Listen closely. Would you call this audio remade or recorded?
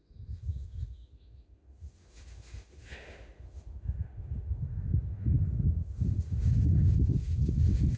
remade